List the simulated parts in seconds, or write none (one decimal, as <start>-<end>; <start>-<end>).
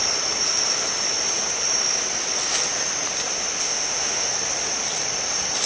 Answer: 3.6-4.3